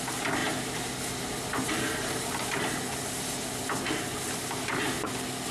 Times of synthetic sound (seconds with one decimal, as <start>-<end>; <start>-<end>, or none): none